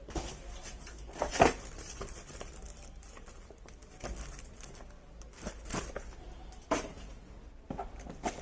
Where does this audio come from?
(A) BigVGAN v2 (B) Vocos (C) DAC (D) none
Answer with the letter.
D